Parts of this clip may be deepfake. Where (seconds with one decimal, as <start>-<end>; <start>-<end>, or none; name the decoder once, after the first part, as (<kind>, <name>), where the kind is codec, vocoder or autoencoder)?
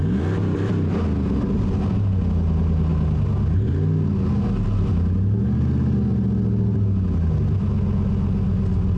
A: none